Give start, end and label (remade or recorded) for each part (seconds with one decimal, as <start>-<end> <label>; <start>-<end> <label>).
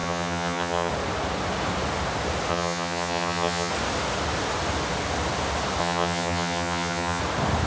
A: 0.0-0.9 remade; 0.9-2.5 recorded; 2.5-3.7 remade; 3.7-5.8 recorded; 5.8-7.2 remade; 7.2-7.7 recorded